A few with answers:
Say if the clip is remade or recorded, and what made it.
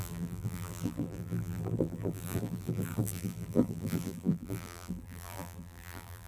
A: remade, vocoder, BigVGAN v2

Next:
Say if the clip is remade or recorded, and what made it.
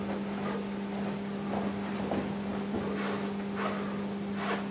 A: recorded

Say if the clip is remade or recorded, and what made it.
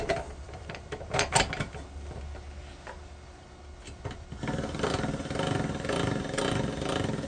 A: recorded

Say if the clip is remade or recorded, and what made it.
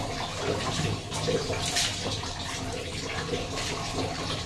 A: recorded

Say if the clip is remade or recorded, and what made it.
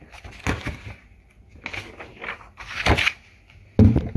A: recorded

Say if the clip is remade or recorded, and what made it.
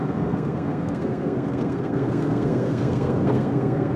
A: remade, codec, SNAC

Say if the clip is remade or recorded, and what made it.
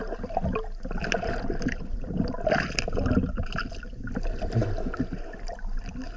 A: recorded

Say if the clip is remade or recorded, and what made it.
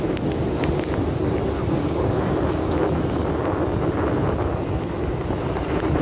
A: recorded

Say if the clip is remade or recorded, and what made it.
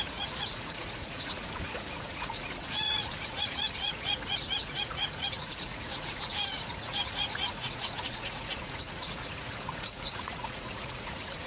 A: remade, vocoder, Vocos